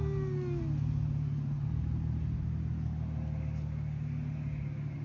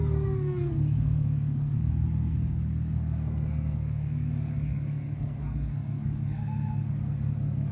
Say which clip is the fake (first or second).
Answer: second